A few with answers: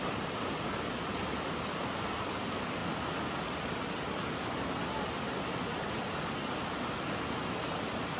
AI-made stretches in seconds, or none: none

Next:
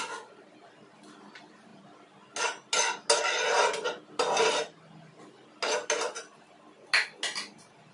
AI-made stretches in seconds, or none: none

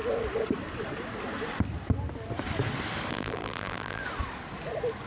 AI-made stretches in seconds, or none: 3.1-4.0 (vocoder, BigVGAN v2)

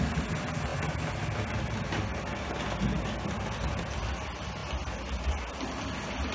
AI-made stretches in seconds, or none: none